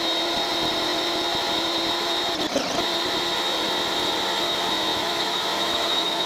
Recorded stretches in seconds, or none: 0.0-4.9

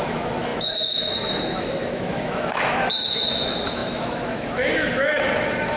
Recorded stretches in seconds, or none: none

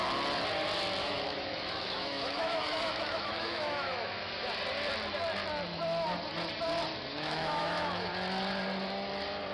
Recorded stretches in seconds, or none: 0.0-1.0; 4.3-7.1; 8.1-9.5

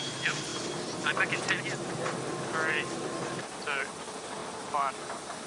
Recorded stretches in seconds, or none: 0.0-5.5